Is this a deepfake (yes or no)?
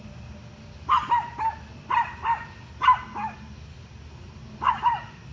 no